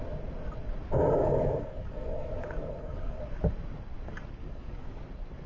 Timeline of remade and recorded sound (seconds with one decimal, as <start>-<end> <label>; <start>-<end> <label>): 0.0-1.2 recorded; 1.2-3.2 remade; 3.2-4.4 recorded; 4.4-5.0 remade; 5.0-5.5 recorded